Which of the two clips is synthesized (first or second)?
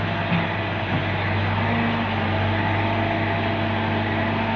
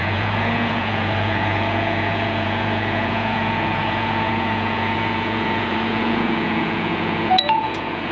second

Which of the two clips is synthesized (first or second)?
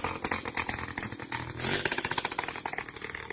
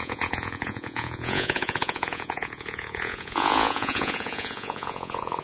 second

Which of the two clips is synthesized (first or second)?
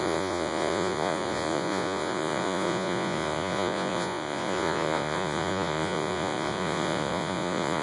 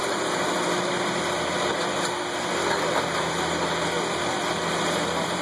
first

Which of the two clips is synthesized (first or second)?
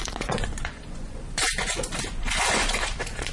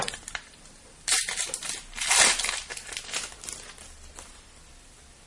first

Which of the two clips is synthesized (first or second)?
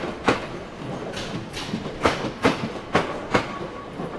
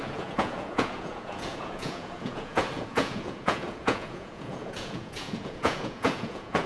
second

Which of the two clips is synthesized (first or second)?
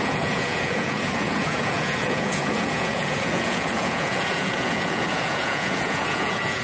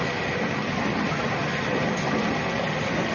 first